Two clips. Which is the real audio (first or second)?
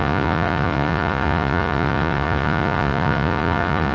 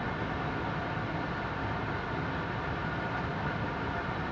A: second